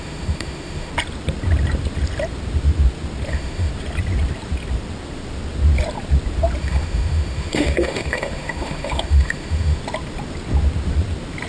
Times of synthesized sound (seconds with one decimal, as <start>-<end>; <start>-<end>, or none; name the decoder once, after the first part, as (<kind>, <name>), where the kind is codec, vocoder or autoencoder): 0.0-0.9 (autoencoder, DAC-VAE); 3.3-3.7; 6.6-9.8